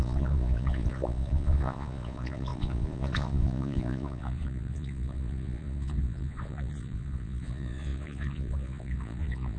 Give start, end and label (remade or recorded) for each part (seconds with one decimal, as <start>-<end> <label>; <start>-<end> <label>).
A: 0.0-9.6 remade